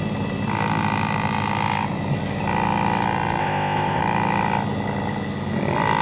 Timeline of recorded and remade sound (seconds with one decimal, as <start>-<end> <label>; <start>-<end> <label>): 0.0-3.4 recorded; 3.4-4.0 remade; 4.0-6.0 recorded